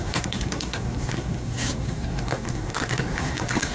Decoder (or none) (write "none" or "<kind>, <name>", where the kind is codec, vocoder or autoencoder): codec, SNAC